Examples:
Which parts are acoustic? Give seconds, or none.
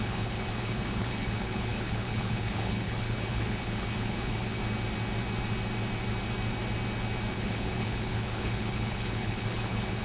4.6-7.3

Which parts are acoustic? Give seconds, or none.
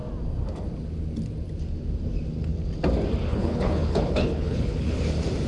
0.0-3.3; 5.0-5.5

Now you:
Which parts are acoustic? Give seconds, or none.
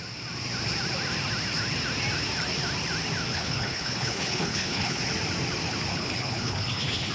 0.0-3.3; 5.0-5.9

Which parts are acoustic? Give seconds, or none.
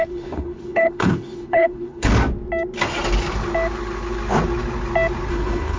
2.1-5.3